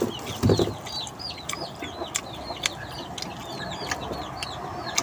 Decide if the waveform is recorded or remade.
recorded